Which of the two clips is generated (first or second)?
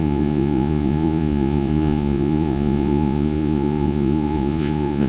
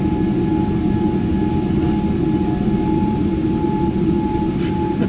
first